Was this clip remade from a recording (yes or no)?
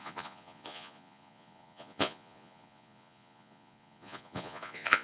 yes